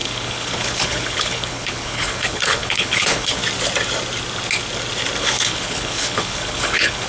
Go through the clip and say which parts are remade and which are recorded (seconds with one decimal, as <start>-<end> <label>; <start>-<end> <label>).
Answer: 0.0-3.4 remade; 3.4-5.2 recorded; 5.2-7.1 remade